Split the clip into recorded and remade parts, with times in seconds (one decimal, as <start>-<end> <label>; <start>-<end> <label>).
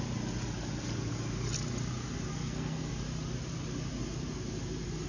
0.0-2.3 recorded; 2.3-2.9 remade; 2.9-5.1 recorded